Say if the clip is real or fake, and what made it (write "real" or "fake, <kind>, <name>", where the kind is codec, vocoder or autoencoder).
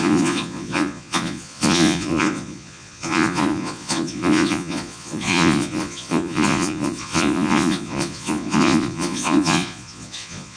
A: fake, vocoder, Vocos